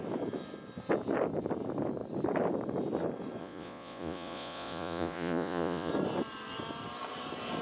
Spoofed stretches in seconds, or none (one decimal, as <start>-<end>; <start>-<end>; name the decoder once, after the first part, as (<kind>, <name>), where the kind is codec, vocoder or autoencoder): 3.4-5.9 (vocoder, Vocos)